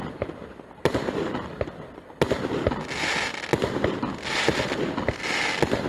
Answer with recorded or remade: recorded